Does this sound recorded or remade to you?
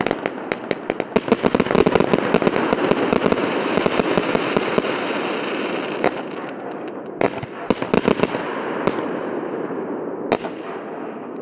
recorded